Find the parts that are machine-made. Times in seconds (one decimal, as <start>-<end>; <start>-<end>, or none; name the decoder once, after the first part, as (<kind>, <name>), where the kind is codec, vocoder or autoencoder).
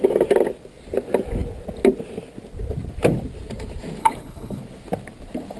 4.0-4.6 (codec, HILCodec)